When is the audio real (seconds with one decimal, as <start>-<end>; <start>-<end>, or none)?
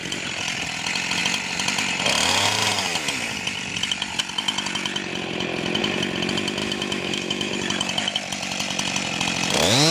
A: 0.0-6.6; 7.5-9.9